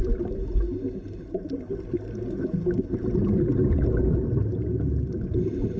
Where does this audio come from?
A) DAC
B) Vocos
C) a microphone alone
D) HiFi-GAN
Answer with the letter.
C